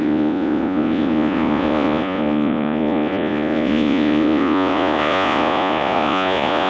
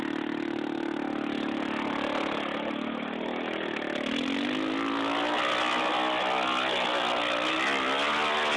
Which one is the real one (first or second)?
second